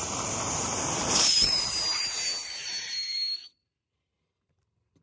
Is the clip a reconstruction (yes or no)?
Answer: yes